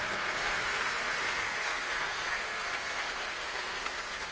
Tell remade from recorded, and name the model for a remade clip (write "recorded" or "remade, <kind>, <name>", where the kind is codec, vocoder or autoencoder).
remade, codec, SNAC